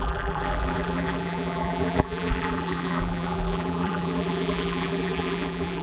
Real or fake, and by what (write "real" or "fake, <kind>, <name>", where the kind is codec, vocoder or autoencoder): fake, vocoder, BigVGAN v2